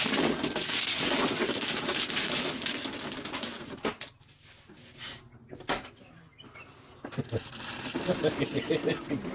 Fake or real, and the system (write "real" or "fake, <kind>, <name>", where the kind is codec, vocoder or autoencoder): real